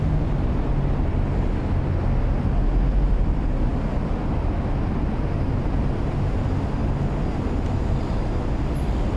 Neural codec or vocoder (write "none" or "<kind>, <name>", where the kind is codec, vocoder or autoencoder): none